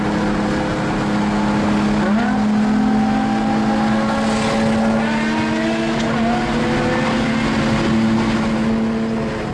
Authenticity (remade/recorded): recorded